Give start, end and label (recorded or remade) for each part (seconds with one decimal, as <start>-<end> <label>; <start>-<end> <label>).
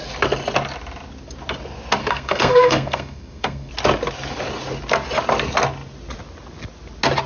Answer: 0.0-2.0 recorded; 2.0-3.7 remade; 3.7-7.3 recorded